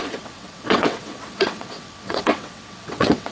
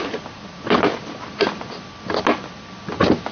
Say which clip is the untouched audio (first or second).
second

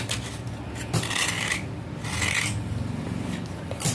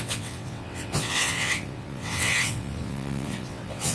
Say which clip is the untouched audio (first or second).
first